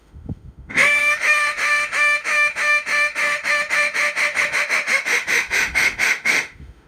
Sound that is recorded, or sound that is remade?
remade